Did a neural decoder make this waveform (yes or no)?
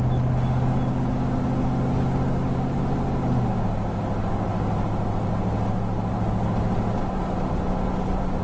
no